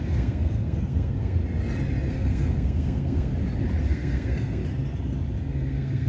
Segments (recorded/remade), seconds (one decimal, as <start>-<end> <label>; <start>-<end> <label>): 0.0-1.4 remade; 1.4-2.1 recorded; 2.1-3.3 remade; 3.3-3.8 recorded; 3.8-4.6 remade; 4.6-5.5 recorded; 5.5-6.1 remade

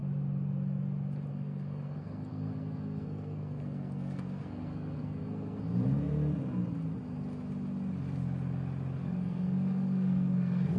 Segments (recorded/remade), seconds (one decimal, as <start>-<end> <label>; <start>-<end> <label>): 0.0-1.3 recorded; 1.3-5.6 remade; 5.6-9.0 recorded; 9.0-10.8 remade

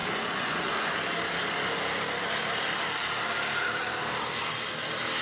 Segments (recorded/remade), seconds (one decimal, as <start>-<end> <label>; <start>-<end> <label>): 0.0-0.9 remade; 0.9-5.2 recorded